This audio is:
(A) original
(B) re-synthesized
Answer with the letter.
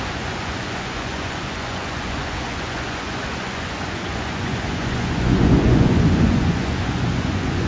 B